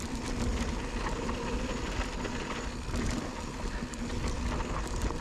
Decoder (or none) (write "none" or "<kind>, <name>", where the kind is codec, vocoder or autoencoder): none